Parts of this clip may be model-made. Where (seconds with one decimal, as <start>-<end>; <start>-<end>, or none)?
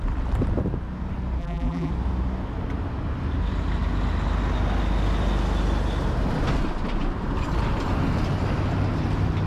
1.4-1.9